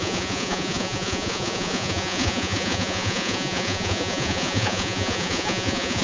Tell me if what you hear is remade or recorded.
remade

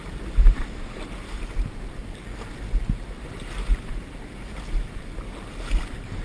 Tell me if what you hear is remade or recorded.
recorded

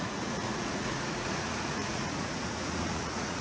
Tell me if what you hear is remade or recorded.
remade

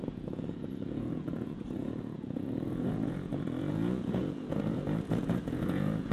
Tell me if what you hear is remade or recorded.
remade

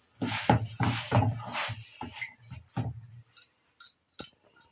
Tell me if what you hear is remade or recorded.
recorded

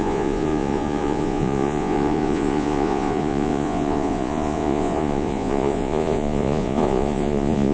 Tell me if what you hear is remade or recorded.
remade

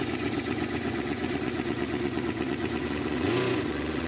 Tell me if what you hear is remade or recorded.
remade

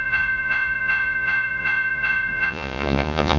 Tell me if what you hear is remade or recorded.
remade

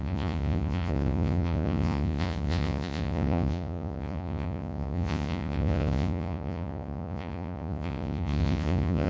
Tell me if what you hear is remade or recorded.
remade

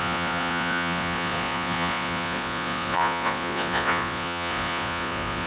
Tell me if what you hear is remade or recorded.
remade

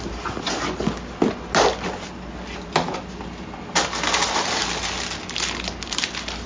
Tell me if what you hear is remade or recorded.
recorded